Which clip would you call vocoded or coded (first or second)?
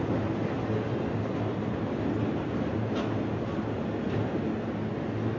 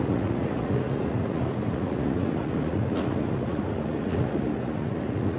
second